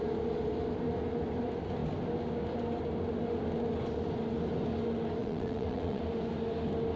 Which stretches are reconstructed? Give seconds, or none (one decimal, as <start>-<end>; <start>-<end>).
5.2-6.0

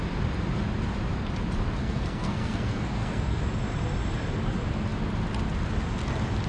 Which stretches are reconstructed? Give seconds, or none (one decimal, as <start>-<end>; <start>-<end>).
1.8-3.4